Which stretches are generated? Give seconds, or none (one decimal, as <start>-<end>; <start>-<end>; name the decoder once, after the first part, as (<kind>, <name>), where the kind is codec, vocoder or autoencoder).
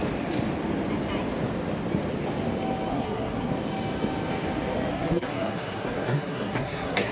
2.9-3.5 (codec, SNAC); 4.9-7.1